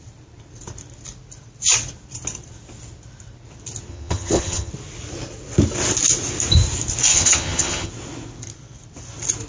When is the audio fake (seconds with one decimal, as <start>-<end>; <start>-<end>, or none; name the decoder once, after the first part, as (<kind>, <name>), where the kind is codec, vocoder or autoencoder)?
3.9-4.7 (vocoder, HiFi-GAN); 7.1-7.9